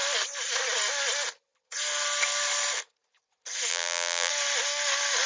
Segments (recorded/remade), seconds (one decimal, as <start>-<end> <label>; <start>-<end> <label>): 0.0-3.7 recorded; 3.7-4.3 remade; 4.3-5.3 recorded